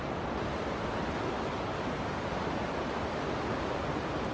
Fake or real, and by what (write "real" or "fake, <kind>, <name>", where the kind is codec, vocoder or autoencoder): real